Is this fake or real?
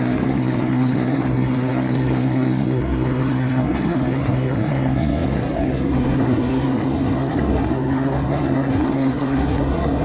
fake